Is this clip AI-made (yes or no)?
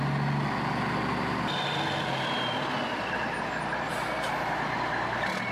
no